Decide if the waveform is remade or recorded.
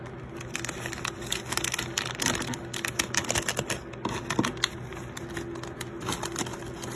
recorded